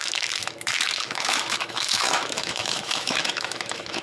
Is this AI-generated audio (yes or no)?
yes